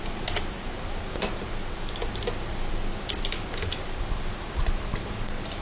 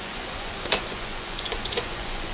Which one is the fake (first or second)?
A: second